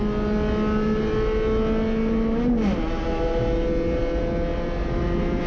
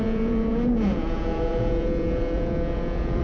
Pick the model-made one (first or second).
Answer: second